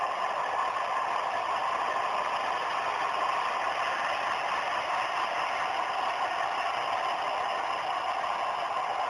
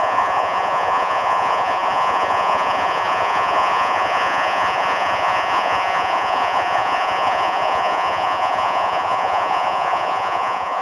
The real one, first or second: first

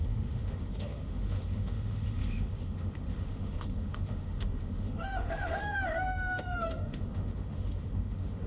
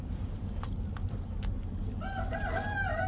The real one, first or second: second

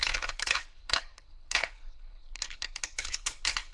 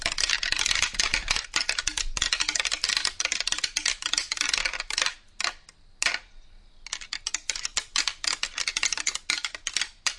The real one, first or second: second